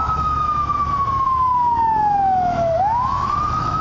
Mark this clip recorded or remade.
remade